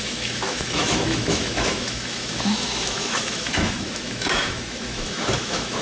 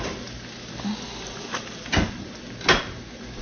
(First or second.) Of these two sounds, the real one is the second